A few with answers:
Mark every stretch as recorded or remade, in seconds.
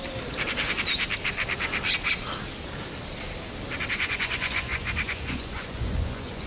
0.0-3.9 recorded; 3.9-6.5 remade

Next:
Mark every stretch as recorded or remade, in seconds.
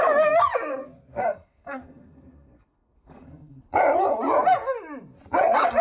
0.0-0.8 recorded; 0.8-3.6 remade; 3.6-5.8 recorded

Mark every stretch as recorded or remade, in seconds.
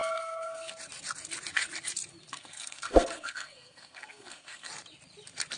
0.0-0.7 remade; 0.7-2.3 recorded; 2.3-4.7 remade; 4.7-5.6 recorded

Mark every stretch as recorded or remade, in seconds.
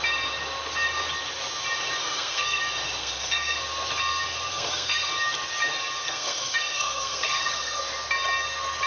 0.0-2.0 recorded; 2.0-2.6 remade; 2.6-3.0 recorded; 3.0-3.6 remade; 3.6-4.5 recorded; 4.5-5.1 remade; 5.1-6.0 recorded; 6.0-7.8 remade; 7.8-8.9 recorded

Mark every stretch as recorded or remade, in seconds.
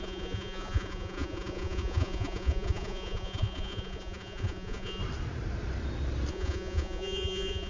0.0-5.0 remade; 5.0-6.3 recorded; 6.3-7.7 remade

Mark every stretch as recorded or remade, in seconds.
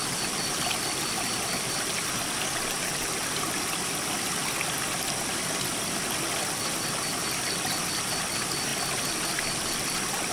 0.0-10.3 recorded